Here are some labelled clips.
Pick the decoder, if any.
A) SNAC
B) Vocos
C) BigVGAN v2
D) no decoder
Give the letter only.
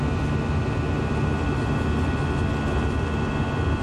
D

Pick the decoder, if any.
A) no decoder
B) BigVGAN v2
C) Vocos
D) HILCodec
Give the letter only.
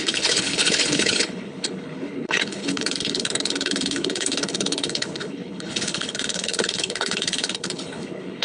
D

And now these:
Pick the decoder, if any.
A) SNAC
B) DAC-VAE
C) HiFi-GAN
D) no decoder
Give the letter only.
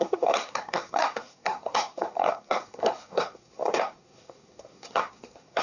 A